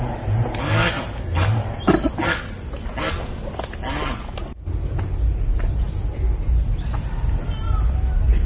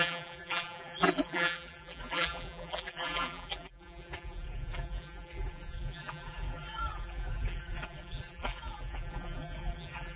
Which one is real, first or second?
first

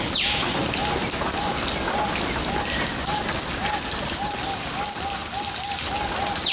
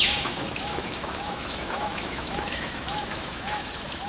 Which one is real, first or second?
first